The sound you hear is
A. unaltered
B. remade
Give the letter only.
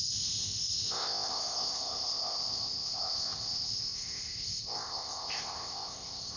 B